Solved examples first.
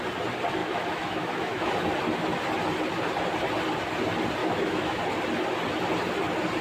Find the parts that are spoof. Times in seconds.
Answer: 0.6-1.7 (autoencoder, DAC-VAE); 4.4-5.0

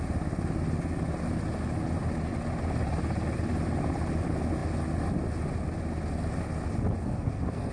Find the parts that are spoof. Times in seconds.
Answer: 7.0-7.7 (codec, SNAC)

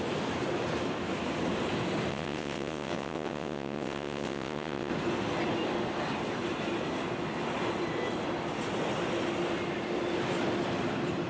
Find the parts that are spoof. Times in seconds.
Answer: 2.1-4.9 (vocoder, WaveNeXt)

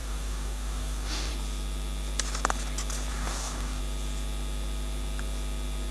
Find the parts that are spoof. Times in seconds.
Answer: 0.0-1.3 (codec, DAC); 3.1-3.8

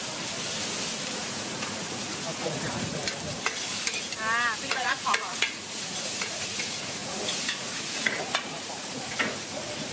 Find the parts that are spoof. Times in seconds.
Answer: 1.2-3.0 (vocoder, Vocos); 4.7-9.9

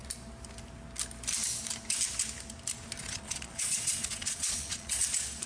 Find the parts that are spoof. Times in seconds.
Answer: 3.0-5.0 (vocoder, Vocos)

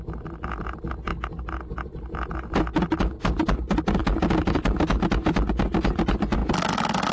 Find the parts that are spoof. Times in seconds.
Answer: none